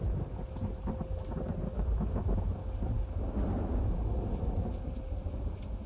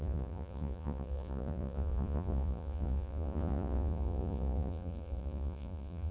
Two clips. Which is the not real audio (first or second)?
second